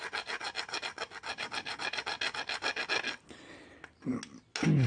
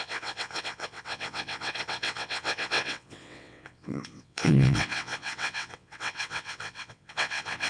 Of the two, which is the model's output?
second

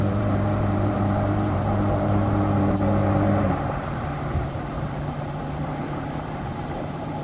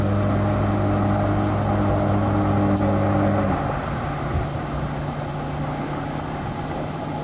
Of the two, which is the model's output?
first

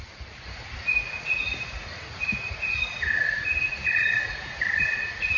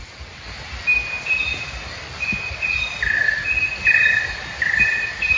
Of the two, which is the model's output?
first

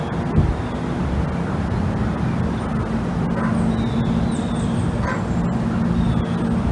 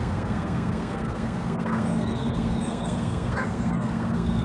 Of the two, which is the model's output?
second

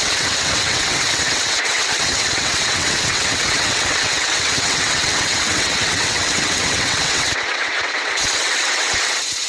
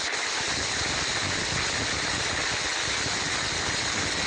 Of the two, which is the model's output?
first